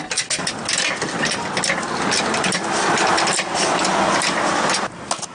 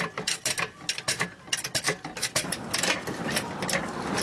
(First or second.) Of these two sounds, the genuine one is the first